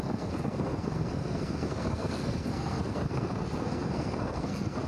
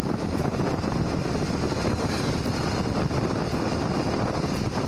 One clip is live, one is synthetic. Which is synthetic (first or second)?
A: first